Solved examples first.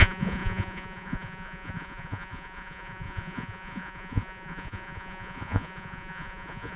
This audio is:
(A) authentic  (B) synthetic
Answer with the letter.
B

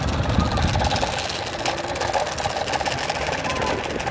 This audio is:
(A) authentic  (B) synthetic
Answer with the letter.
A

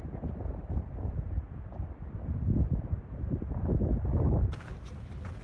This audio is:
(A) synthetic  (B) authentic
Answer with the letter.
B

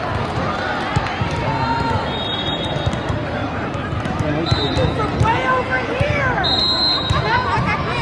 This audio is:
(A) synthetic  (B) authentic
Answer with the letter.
B